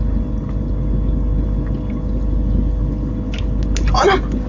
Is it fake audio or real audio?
real